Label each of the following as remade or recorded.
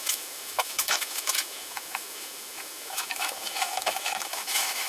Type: remade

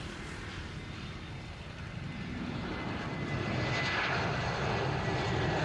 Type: recorded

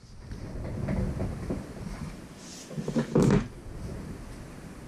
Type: recorded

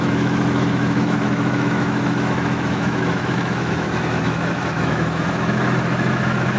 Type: remade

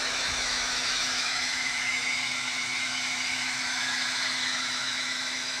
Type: remade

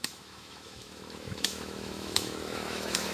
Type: remade